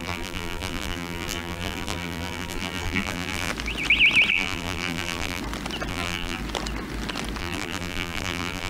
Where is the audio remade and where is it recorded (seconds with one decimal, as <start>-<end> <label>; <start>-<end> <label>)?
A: 0.0-3.5 remade; 3.5-4.3 recorded; 4.3-5.4 remade; 5.4-5.9 recorded; 5.9-6.4 remade; 6.4-7.4 recorded; 7.4-8.7 remade